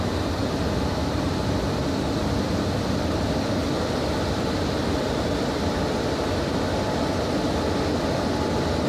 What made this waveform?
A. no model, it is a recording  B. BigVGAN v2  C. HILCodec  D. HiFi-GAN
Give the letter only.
A